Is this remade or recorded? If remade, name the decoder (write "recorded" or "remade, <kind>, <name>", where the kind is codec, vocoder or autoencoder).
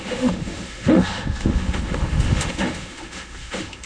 remade, autoencoder, DAC-VAE